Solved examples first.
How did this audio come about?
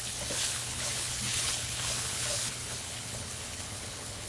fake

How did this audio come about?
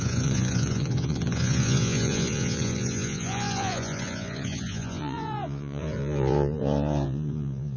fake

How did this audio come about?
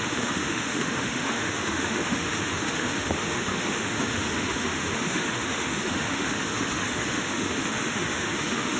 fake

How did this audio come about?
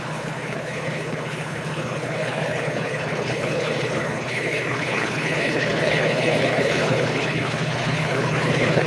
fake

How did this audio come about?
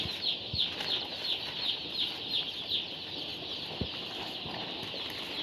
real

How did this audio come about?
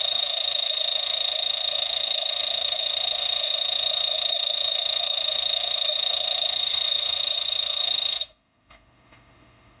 fake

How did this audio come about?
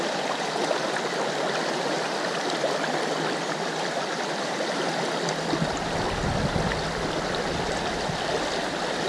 real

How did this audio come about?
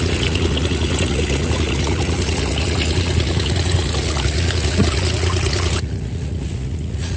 fake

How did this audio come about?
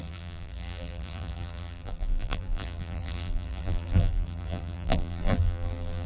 fake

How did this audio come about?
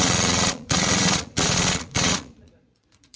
fake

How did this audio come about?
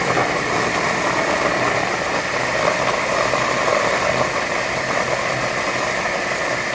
real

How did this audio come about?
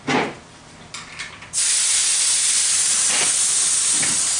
real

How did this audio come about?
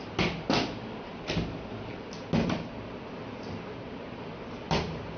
real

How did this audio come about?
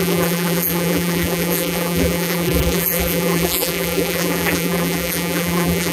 fake